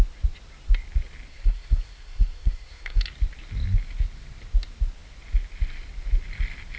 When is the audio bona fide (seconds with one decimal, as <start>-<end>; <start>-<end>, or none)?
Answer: 0.0-1.3; 3.0-6.8